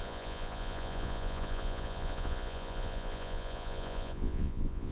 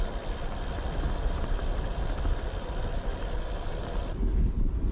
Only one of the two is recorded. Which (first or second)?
second